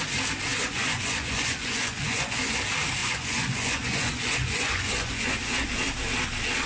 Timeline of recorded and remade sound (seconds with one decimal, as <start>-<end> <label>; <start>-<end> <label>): 0.0-0.5 recorded; 0.5-2.6 remade; 2.6-3.0 recorded; 3.0-5.4 remade; 5.4-6.7 recorded